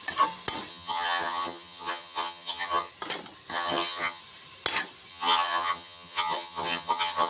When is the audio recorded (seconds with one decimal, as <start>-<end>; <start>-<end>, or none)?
0.0-0.7; 2.9-3.5; 4.2-5.1